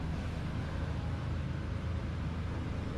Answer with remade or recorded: recorded